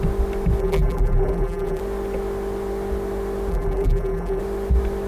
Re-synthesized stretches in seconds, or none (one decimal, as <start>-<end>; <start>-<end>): 0.6-1.8; 3.5-4.4